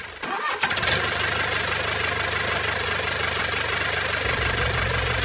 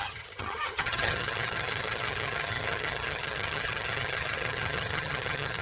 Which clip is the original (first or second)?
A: first